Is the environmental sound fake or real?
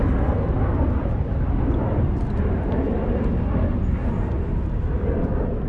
real